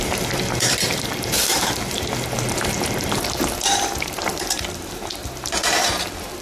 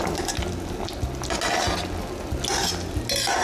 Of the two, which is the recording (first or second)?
second